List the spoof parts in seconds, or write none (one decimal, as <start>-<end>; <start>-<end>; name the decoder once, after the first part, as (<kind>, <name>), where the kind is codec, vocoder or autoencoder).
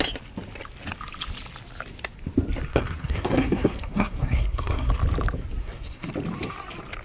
2.7-4.9 (codec, SNAC); 5.6-6.1